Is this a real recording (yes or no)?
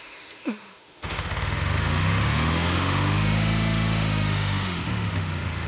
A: no